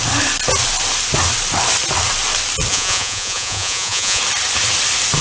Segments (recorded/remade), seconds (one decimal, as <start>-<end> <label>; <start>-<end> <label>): 0.0-2.7 recorded; 2.7-4.2 remade; 4.2-5.2 recorded